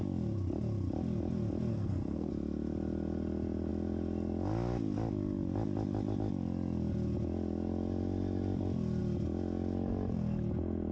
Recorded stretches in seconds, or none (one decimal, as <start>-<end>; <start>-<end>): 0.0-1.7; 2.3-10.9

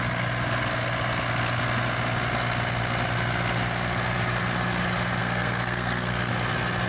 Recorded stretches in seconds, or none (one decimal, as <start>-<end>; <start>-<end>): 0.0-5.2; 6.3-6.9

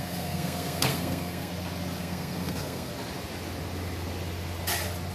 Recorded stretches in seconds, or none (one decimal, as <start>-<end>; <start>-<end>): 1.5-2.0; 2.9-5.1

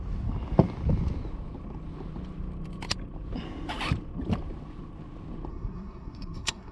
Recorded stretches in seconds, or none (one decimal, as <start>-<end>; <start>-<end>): 0.0-5.5